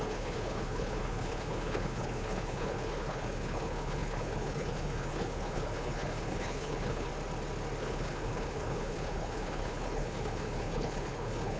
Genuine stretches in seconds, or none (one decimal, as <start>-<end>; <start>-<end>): 7.1-7.8

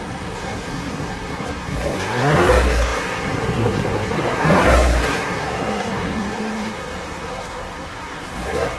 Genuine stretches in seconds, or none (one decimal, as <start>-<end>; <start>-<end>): none

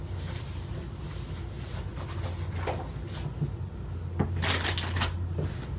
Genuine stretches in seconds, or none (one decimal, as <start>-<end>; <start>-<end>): 0.0-5.8

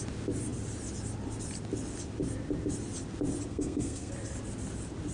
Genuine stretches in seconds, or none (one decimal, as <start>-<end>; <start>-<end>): 0.0-3.5; 4.1-5.1